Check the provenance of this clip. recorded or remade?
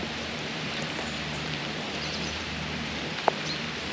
remade